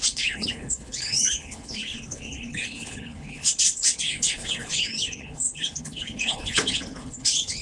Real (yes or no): no